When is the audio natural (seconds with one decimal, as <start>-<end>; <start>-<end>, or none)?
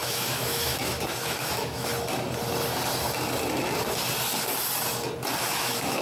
1.9-5.4